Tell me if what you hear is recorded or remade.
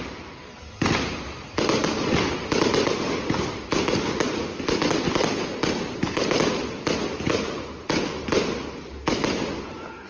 recorded